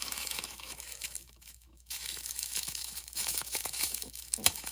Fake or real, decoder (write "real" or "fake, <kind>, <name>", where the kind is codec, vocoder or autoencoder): fake, autoencoder, DAC-VAE